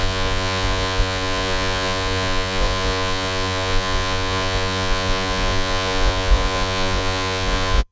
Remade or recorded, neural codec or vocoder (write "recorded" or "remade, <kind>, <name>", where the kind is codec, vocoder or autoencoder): remade, vocoder, Vocos